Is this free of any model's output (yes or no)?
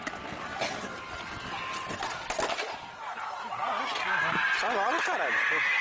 yes